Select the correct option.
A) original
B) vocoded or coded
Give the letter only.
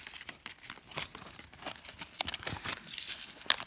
B